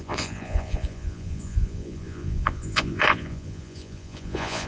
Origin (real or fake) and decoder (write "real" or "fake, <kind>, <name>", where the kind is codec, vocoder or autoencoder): fake, vocoder, Vocos